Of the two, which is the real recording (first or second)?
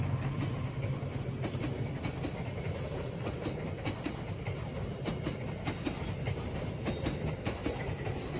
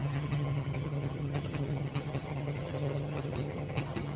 first